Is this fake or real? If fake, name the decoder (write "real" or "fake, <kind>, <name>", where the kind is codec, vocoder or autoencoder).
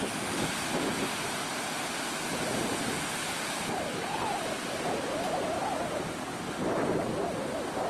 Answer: real